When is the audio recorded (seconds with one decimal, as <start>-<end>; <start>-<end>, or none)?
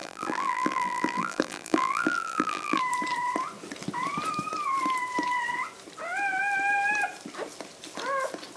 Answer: 2.8-8.6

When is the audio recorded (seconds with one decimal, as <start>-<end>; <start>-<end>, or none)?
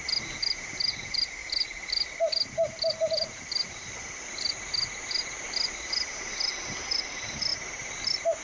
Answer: 0.0-8.4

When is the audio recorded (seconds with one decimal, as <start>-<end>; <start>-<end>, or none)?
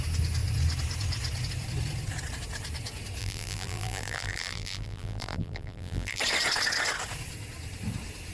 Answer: 0.0-3.2; 6.2-8.3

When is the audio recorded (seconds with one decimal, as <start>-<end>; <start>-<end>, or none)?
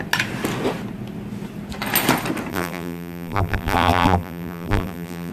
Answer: 0.0-2.5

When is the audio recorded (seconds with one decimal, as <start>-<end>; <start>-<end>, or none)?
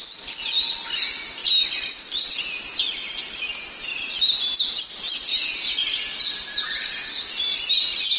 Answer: 0.0-8.2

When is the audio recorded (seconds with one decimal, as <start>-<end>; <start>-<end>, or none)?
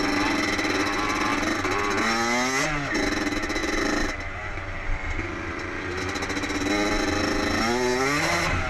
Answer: 0.0-3.6; 5.3-8.7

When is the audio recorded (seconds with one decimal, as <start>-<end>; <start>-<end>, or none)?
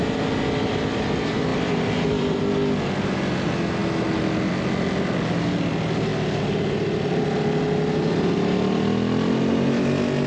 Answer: 0.0-1.5; 2.4-10.3